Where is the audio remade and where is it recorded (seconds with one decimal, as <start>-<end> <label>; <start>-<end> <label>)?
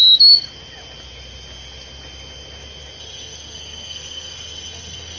0.0-3.0 recorded; 3.0-5.2 remade